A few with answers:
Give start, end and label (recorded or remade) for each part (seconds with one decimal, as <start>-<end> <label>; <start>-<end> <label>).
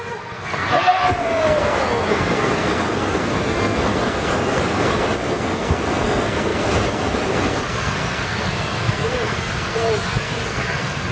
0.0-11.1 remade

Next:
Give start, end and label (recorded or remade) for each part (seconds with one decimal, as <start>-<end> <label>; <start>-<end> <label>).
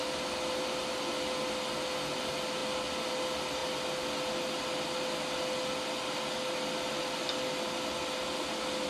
0.0-8.9 recorded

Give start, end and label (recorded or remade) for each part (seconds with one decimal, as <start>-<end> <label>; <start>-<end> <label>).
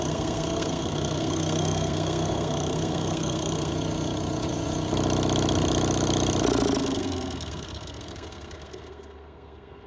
0.0-3.7 remade; 3.7-6.8 recorded; 6.8-9.9 remade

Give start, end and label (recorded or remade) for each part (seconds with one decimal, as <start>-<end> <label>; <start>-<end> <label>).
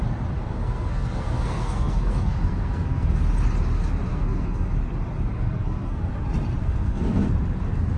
0.0-0.4 recorded; 0.4-3.2 remade; 3.2-4.1 recorded; 4.1-4.7 remade; 4.7-5.3 recorded; 5.3-6.1 remade; 6.1-6.6 recorded; 6.6-7.3 remade; 7.3-8.0 recorded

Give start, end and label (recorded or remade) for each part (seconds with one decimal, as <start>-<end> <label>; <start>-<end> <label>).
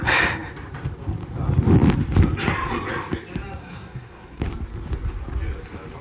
0.0-3.6 recorded; 3.6-4.4 remade; 4.4-6.0 recorded